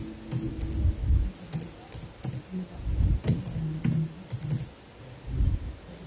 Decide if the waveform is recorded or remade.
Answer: recorded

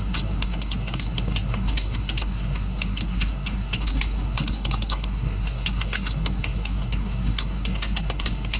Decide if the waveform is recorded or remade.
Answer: remade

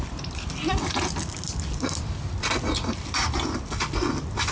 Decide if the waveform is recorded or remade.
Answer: recorded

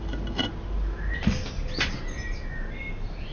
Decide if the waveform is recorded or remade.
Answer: recorded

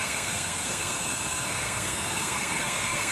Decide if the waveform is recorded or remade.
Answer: remade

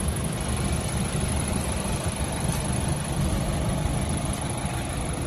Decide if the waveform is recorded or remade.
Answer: recorded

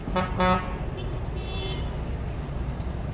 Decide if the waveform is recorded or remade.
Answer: recorded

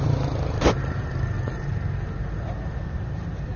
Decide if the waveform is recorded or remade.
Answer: recorded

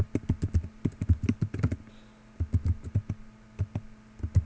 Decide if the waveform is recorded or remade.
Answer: recorded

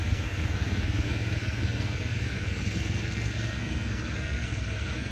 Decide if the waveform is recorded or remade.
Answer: remade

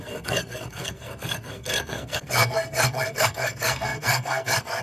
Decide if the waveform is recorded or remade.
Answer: remade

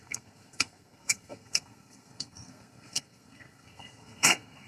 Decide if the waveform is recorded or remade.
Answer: remade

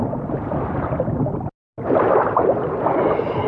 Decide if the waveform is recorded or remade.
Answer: recorded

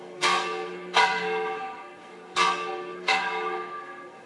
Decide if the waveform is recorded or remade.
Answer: remade